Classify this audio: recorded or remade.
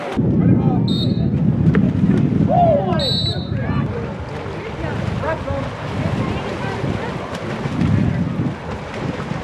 recorded